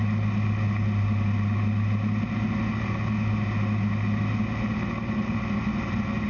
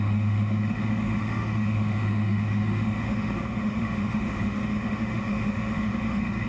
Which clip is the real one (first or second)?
first